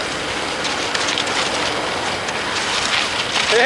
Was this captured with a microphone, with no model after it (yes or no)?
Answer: yes